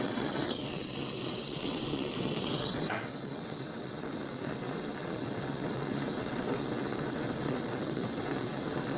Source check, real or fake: fake